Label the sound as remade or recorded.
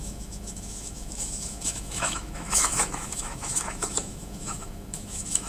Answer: remade